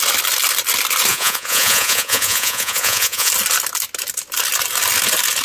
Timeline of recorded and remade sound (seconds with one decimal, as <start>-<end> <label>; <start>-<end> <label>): 0.0-1.1 recorded; 1.1-3.3 remade; 3.3-5.4 recorded